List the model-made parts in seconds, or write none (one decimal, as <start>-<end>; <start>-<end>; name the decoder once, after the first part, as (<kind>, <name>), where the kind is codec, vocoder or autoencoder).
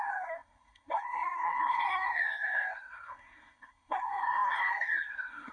0.0-5.5 (codec, SNAC)